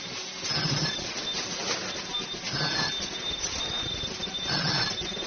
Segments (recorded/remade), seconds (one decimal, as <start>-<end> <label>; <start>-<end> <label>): 0.0-5.3 recorded